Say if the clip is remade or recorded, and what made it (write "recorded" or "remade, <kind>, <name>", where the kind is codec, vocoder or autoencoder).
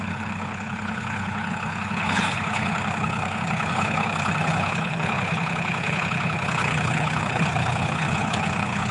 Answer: remade, codec, HILCodec